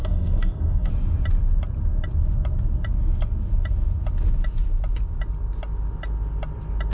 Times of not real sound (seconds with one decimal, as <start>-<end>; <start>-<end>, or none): 0.0-0.9